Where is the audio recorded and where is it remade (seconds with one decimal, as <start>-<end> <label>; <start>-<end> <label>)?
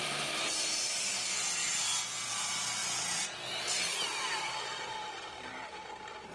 0.0-1.6 remade; 1.6-2.3 recorded; 2.3-2.8 remade; 2.8-4.2 recorded; 4.2-6.3 remade